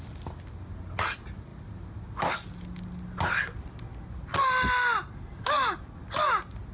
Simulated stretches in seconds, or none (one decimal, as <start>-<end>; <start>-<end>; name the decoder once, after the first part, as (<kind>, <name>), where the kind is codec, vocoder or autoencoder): none